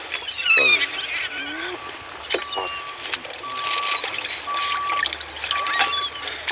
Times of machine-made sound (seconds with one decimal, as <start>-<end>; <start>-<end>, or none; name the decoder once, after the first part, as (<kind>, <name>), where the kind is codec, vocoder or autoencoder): none